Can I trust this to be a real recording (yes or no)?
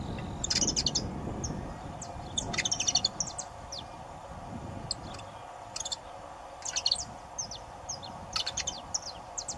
yes